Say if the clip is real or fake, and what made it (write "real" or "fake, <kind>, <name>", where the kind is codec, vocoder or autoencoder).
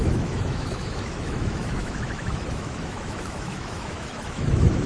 fake, autoencoder, DAC-VAE